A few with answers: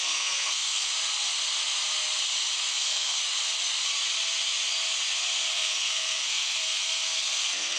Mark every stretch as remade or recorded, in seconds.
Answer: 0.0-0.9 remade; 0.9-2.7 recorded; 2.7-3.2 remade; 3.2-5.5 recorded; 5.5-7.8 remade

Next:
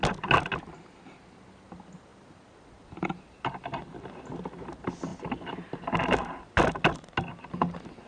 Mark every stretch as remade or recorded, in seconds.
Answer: 0.0-8.1 recorded

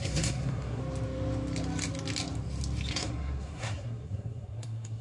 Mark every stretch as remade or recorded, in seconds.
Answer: 0.0-0.8 remade; 0.8-2.9 recorded; 2.9-5.0 remade

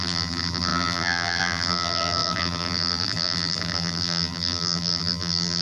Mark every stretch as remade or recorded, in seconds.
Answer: 0.0-5.6 remade